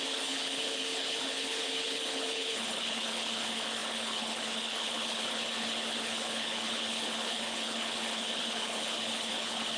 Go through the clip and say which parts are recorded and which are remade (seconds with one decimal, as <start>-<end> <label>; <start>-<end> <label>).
0.0-9.8 remade

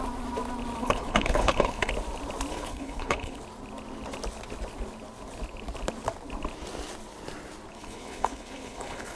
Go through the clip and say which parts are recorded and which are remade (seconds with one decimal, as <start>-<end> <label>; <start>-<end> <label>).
0.0-0.8 recorded; 0.8-1.9 remade; 1.9-2.5 recorded; 2.5-3.4 remade; 3.4-7.7 recorded; 7.7-9.2 remade

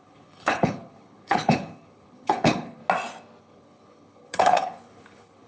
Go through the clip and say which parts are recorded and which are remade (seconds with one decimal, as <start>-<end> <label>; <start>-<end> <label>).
0.0-2.8 remade; 2.8-3.4 recorded; 3.4-5.5 remade

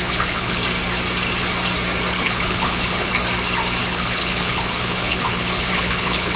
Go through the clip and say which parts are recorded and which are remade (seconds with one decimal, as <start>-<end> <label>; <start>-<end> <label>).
0.0-0.6 remade; 0.6-2.1 recorded; 2.1-3.1 remade; 3.1-3.8 recorded; 3.8-6.4 remade

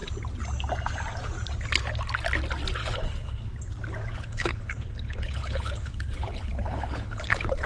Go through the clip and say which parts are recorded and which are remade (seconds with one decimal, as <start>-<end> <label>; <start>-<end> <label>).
0.0-2.8 recorded; 2.8-3.5 remade; 3.5-4.1 recorded; 4.1-7.7 remade

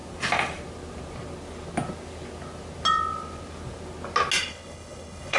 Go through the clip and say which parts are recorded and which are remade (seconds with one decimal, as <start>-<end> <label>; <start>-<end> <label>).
0.0-4.4 recorded; 4.4-5.4 remade